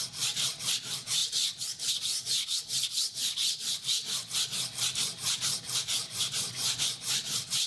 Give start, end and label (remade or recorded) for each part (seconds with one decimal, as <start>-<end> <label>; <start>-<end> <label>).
0.0-5.9 recorded; 5.9-7.1 remade; 7.1-7.7 recorded